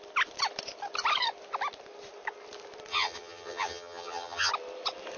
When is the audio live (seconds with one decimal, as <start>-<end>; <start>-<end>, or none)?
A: 0.0-2.9; 4.5-5.2